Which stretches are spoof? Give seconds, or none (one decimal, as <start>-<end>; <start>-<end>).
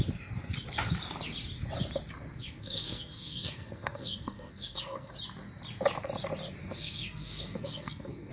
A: 2.4-5.1; 6.6-8.3